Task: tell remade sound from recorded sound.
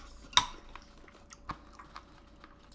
recorded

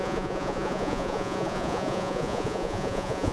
remade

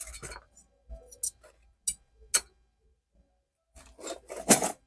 recorded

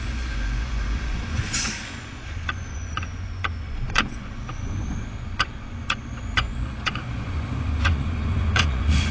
remade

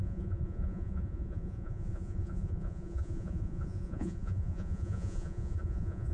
remade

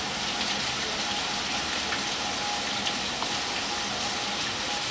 recorded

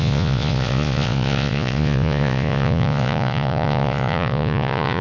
remade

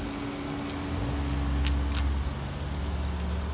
recorded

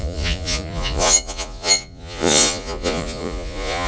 remade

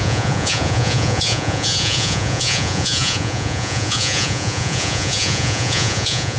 remade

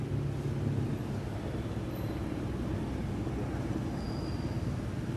recorded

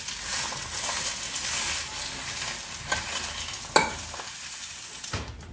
recorded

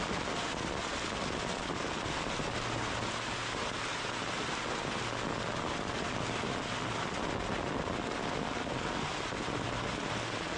recorded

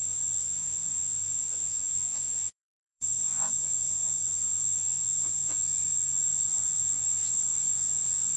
remade